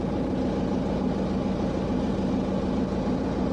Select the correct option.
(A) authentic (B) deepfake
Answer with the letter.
A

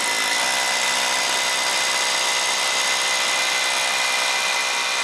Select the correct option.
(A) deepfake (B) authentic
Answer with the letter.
B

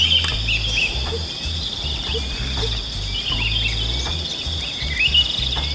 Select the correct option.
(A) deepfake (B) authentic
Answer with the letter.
B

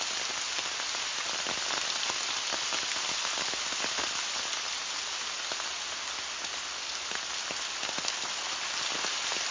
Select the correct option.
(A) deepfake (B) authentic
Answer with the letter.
B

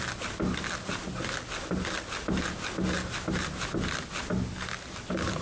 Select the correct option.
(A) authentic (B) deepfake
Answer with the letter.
A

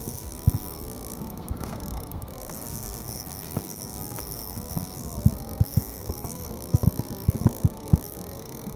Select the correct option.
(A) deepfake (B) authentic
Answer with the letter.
A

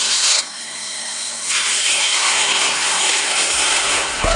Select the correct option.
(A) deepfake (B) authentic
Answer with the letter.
A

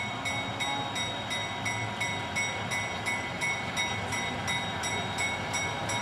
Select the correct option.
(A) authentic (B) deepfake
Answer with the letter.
A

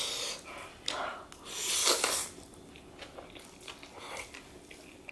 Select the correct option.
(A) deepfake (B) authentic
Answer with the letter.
B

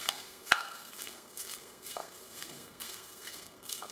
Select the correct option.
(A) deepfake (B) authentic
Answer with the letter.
A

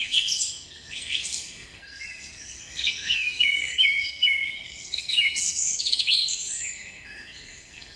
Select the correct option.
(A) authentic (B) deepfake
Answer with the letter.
B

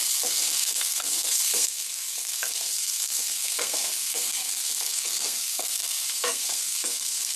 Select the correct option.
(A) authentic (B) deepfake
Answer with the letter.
B